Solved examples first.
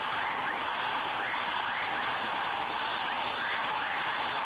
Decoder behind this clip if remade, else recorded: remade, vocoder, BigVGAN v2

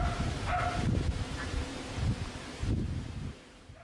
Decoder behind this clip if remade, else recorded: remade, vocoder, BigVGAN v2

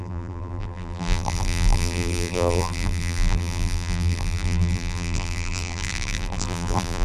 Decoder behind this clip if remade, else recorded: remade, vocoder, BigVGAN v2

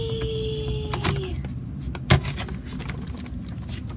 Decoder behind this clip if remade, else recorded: recorded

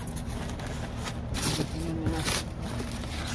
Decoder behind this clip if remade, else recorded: recorded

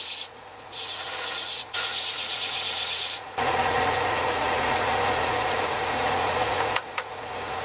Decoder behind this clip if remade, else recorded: remade, vocoder, Vocos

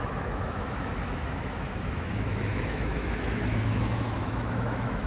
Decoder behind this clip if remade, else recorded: remade, autoencoder, DAC-VAE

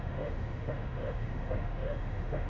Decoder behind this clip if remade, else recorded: remade, autoencoder, DAC-VAE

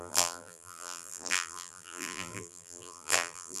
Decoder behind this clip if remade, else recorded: remade, vocoder, BigVGAN v2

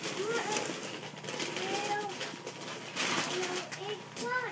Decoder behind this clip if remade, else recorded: recorded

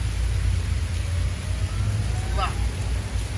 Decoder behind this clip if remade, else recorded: recorded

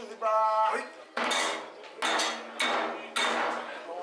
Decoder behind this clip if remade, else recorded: recorded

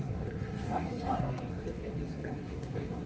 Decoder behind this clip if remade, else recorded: remade, codec, SNAC